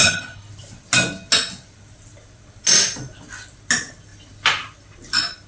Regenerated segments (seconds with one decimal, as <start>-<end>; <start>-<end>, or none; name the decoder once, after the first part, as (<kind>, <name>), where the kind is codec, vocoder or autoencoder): 0.0-0.5 (codec, HILCodec)